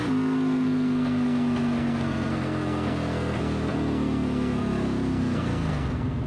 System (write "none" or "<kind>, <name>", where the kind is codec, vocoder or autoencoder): codec, SNAC